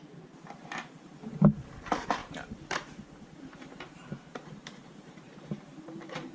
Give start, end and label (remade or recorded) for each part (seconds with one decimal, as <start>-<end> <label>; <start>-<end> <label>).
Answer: 0.0-6.3 remade

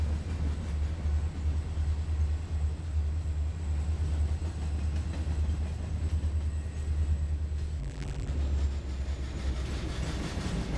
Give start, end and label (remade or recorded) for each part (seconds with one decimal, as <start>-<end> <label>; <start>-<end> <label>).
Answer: 0.0-7.8 recorded; 7.8-8.3 remade; 8.3-10.8 recorded

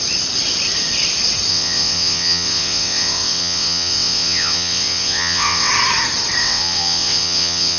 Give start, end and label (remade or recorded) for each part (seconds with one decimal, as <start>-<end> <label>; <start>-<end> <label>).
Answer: 0.0-1.5 recorded; 1.5-5.7 remade; 5.7-6.4 recorded; 6.4-7.8 remade

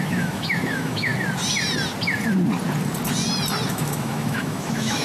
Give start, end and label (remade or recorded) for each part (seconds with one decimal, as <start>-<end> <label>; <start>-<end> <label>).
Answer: 0.0-1.1 remade; 1.1-3.7 recorded; 3.7-5.0 remade

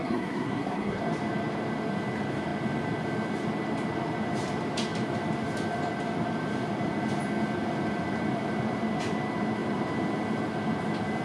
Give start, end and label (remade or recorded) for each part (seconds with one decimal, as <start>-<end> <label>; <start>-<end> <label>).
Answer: 0.0-1.0 remade; 1.0-11.2 recorded

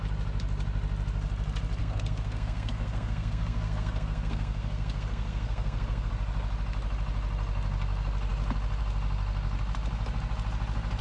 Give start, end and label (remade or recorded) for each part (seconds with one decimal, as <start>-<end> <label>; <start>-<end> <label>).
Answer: 0.0-1.8 recorded; 1.8-6.1 remade; 6.1-11.0 recorded

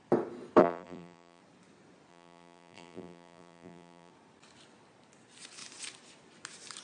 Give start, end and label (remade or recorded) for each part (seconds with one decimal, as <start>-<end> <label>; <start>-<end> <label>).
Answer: 0.0-0.6 recorded; 0.6-1.4 remade; 1.4-2.1 recorded; 2.1-4.1 remade; 4.1-6.8 recorded

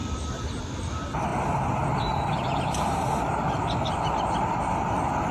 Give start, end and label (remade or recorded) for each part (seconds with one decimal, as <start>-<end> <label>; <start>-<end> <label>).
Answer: 0.0-0.6 remade; 0.6-1.3 recorded; 1.3-3.9 remade; 3.9-5.3 recorded